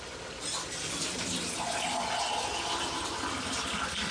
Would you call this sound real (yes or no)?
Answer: yes